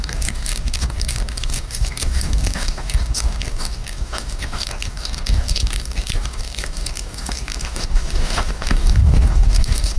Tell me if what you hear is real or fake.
fake